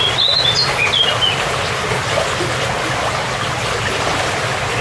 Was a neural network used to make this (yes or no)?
no